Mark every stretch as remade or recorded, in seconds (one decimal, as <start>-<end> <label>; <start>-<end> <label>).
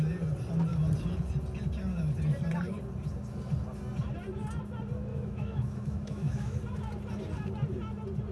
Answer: 0.0-5.1 recorded; 5.1-6.6 remade; 6.6-8.3 recorded